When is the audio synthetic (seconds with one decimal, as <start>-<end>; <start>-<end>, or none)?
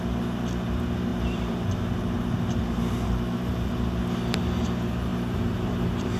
1.1-4.0; 5.1-6.2